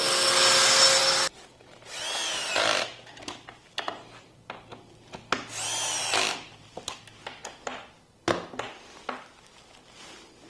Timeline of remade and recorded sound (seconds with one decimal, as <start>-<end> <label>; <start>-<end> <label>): 0.0-10.5 recorded